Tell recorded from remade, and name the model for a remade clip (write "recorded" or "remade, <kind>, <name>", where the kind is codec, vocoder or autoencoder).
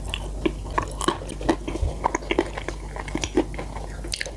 recorded